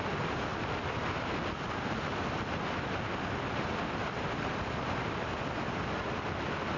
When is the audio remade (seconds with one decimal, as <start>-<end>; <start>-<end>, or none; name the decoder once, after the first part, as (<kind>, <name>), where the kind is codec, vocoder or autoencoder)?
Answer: none